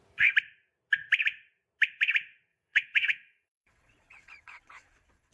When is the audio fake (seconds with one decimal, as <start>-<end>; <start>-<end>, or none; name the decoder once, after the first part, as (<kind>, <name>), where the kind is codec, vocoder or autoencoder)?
2.5-5.3 (vocoder, WaveNeXt)